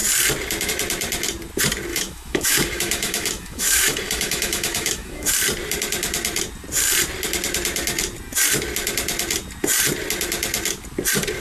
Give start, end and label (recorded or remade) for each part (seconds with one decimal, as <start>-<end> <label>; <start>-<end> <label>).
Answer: 0.0-1.9 recorded; 1.9-5.3 remade; 5.3-11.4 recorded